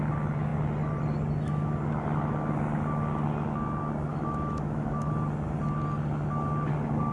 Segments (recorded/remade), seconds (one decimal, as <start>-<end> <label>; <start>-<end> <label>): 0.0-4.1 recorded; 4.1-5.1 remade; 5.1-7.1 recorded